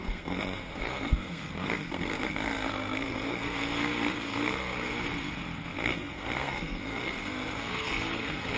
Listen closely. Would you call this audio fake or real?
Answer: fake